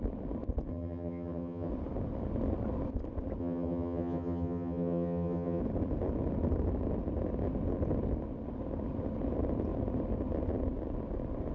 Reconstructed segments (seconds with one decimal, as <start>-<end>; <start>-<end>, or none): 0.7-1.7; 3.4-5.6